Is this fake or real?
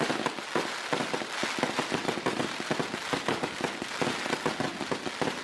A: real